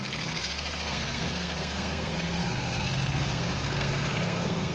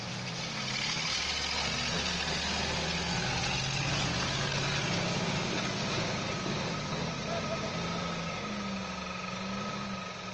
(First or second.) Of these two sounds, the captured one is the second